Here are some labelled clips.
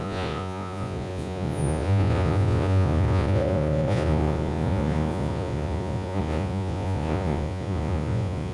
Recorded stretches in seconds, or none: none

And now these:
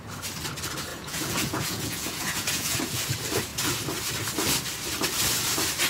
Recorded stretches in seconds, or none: 0.0-0.9; 3.0-5.9

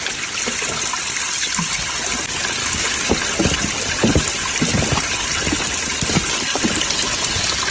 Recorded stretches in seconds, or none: 0.0-2.6; 3.1-7.7

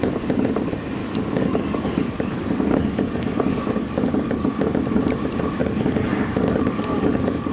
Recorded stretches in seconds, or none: 0.0-1.0; 4.5-5.6